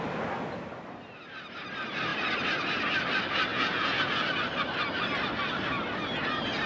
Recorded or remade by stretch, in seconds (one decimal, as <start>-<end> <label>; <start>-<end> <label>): 0.0-3.5 recorded; 3.5-4.2 remade; 4.2-6.7 recorded